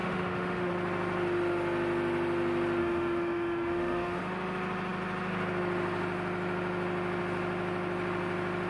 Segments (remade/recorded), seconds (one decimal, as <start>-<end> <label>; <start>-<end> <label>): 0.0-0.7 remade; 0.7-2.8 recorded; 2.8-4.2 remade; 4.2-8.7 recorded